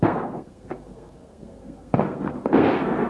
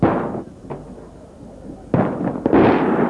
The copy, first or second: first